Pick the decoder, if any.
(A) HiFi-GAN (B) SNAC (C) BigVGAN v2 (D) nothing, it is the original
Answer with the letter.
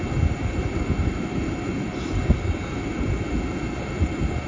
C